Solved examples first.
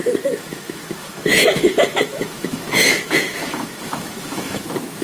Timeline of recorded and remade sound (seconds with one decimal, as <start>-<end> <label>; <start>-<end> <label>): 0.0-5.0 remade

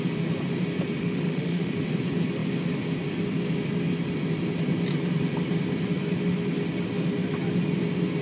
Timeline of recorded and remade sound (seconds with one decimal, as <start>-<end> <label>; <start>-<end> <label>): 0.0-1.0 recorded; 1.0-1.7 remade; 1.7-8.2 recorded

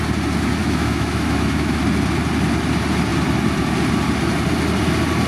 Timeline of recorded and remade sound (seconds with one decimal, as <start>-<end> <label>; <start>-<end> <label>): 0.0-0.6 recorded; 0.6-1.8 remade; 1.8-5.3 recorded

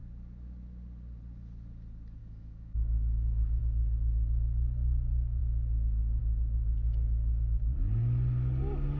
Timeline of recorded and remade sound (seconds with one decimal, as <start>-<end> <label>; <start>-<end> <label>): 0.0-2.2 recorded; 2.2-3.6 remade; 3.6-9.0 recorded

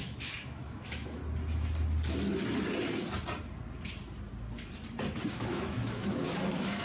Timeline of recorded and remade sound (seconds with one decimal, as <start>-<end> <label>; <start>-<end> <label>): 0.0-1.2 remade; 1.2-5.3 recorded; 5.3-6.8 remade